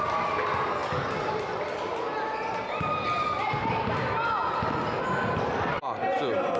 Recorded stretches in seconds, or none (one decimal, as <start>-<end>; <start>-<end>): 0.0-6.6